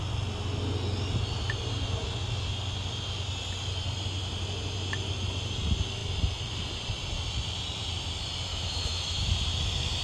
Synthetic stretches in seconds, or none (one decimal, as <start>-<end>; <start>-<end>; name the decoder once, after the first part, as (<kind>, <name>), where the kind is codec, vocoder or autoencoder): 8.5-9.3 (autoencoder, DAC-VAE)